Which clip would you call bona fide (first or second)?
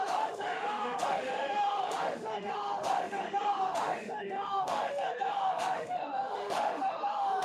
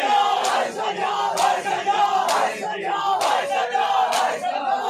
second